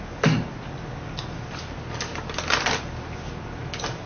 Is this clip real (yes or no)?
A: yes